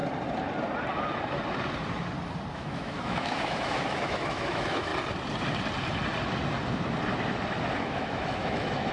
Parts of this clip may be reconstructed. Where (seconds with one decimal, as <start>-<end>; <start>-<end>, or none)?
2.5-4.9; 7.8-8.9